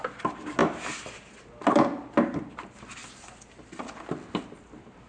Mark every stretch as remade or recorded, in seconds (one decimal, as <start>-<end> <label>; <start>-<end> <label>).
0.0-5.1 recorded